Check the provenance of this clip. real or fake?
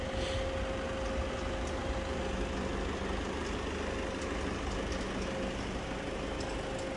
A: real